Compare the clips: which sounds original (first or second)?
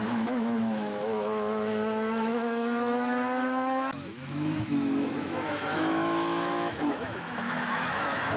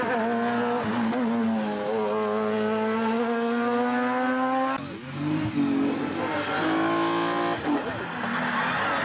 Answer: second